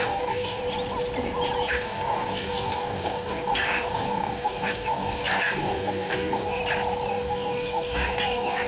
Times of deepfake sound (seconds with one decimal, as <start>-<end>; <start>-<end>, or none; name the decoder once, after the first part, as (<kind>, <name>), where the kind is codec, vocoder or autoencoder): 0.0-0.6 (codec, DAC); 1.7-6.6; 7.1-8.7